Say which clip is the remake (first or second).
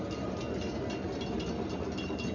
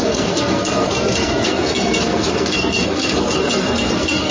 second